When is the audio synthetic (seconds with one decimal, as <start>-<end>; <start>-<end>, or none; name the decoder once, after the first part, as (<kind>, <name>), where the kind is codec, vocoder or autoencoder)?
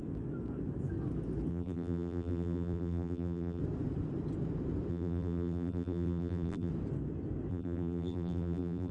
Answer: 1.5-3.6 (vocoder, BigVGAN v2); 4.9-6.7; 7.5-8.9